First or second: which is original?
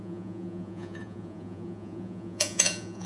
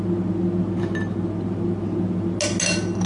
second